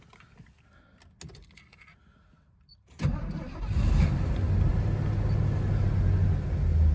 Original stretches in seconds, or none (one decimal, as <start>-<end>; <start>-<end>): 0.0-2.7; 3.7-6.9